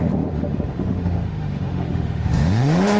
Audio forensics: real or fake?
fake